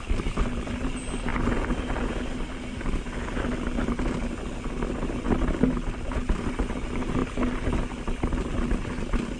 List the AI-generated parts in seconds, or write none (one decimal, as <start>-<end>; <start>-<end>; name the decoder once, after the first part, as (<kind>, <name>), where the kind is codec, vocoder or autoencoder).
none